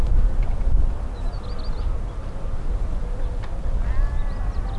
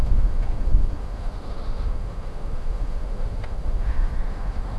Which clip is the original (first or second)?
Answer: first